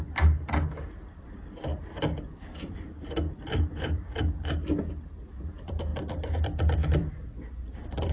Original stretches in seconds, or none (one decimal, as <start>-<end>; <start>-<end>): 0.0-1.7; 4.5-8.1